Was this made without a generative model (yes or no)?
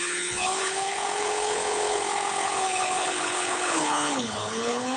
no